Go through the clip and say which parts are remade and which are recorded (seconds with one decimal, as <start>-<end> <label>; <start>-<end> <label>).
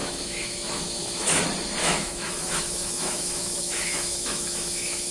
0.0-1.4 remade; 1.4-1.8 recorded; 1.8-5.1 remade